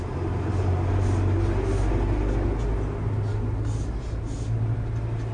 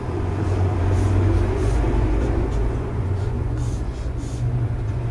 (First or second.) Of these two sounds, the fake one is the second